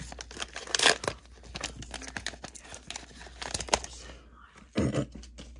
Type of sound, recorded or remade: recorded